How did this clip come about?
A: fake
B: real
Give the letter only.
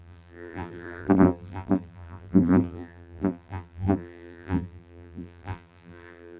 A